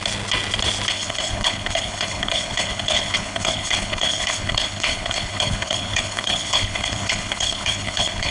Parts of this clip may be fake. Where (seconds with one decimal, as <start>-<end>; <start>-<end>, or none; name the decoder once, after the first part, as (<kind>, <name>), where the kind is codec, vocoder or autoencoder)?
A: 0.9-8.3 (codec, HILCodec)